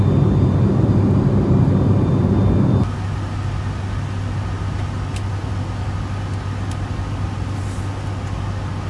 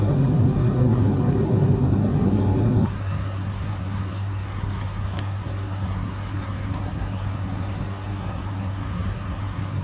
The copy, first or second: second